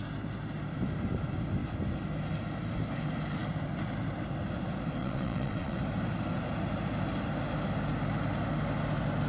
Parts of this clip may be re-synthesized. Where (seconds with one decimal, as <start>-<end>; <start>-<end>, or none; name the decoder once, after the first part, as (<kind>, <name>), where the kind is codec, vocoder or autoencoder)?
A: 5.0-5.8 (vocoder, WaveNeXt)